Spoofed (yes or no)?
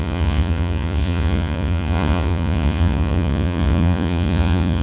yes